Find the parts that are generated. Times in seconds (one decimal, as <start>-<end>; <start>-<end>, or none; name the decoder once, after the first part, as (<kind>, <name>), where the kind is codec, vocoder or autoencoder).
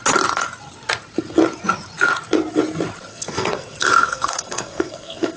3.1-5.4 (codec, SNAC)